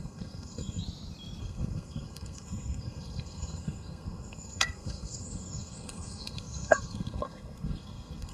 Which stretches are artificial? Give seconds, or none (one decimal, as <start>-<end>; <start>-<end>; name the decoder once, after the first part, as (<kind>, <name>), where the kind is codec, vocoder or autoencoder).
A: 0.0-0.8 (codec, SNAC); 1.4-8.3